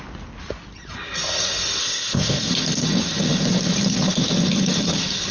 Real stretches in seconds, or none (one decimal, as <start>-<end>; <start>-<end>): 0.0-1.8; 2.5-5.3